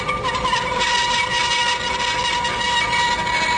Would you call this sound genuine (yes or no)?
yes